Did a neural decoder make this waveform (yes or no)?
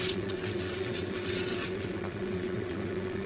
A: yes